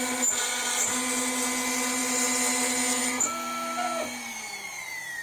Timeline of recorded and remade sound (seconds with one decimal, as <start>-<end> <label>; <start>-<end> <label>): 0.0-5.2 recorded